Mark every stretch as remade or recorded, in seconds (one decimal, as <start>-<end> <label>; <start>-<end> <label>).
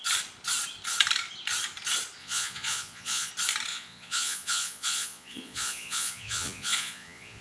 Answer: 0.0-2.2 recorded; 2.2-3.3 remade; 3.3-3.7 recorded; 3.7-7.4 remade